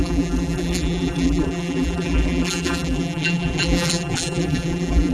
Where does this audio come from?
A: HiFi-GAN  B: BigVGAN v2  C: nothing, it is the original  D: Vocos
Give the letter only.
B